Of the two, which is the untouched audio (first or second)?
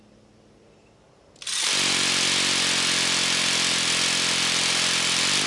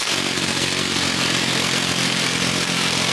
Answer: first